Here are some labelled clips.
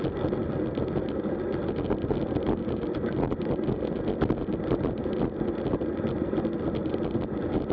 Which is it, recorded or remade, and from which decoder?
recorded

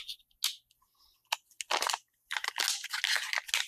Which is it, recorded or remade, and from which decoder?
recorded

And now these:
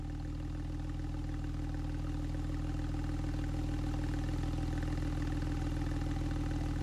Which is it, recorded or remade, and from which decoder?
recorded